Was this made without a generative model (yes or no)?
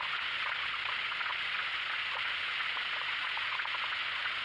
no